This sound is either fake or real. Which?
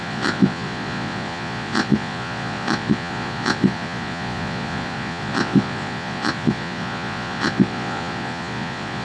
fake